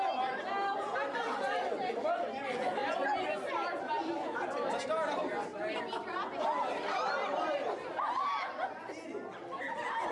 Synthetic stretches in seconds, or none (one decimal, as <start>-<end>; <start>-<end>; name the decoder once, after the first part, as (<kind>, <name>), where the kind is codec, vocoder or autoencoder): 5.2-8.0 (vocoder, BigVGAN v2)